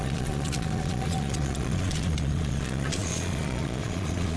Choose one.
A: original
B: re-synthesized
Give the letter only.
B